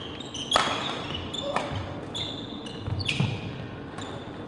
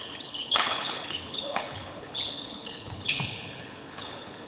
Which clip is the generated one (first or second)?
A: second